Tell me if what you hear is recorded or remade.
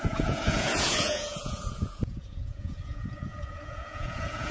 remade